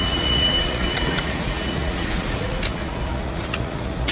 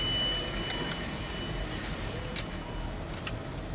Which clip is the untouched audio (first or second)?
second